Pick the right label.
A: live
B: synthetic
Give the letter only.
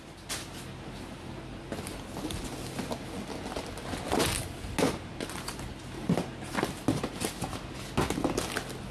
A